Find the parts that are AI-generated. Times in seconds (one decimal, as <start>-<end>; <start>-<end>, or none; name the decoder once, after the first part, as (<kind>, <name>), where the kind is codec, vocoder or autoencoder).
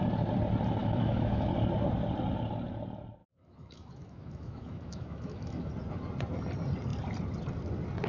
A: 0.8-1.5 (autoencoder, DAC-VAE); 3.2-5.7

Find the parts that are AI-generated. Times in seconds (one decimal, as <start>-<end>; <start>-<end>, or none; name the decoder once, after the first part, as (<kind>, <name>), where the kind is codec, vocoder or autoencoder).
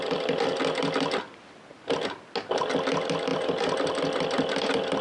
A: none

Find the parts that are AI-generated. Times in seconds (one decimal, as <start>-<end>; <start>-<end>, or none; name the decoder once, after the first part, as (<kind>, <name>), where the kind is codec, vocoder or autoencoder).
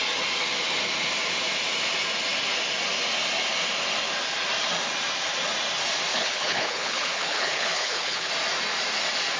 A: 6.1-8.3 (codec, HILCodec)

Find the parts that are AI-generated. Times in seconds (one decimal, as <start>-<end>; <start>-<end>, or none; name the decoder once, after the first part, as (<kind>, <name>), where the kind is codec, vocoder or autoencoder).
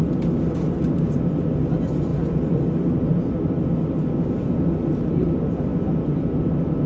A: none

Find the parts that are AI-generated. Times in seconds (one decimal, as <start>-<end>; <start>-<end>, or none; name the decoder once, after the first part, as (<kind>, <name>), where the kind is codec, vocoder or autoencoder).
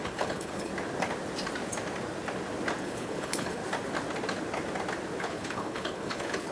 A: 0.0-0.7 (codec, HILCodec); 2.8-3.6; 5.2-6.5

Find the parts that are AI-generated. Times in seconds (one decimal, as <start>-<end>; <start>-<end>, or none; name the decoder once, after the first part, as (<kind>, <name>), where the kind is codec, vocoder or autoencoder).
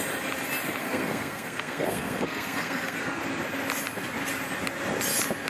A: 0.8-3.2 (codec, SNAC)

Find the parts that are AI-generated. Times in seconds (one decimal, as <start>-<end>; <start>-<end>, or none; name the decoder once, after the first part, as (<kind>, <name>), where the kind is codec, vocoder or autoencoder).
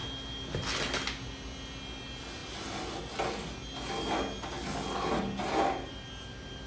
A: none